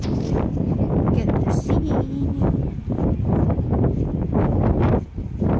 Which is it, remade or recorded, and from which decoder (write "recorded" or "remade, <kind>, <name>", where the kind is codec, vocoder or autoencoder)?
recorded